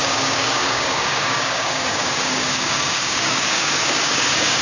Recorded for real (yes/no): no